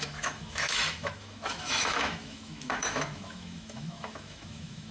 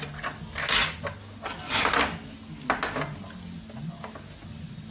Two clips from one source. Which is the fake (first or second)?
first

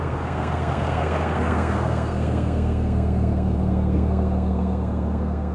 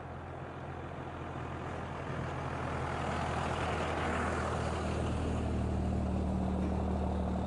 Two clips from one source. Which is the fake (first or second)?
first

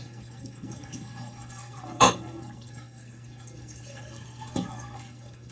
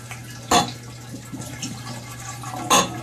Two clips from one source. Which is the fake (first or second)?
first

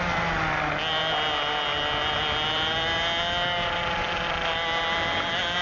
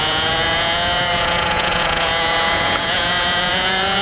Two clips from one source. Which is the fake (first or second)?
second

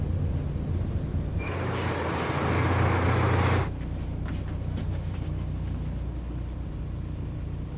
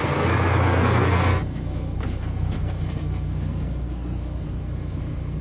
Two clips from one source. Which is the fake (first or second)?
second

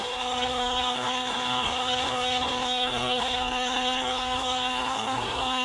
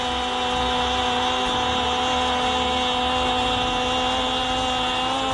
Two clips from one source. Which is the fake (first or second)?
first